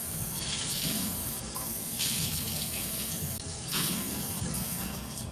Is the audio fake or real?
fake